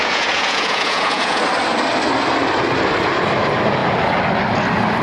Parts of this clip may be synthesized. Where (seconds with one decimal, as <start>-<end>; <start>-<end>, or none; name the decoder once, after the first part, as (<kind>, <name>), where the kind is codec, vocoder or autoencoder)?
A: 0.0-1.4 (vocoder, Vocos)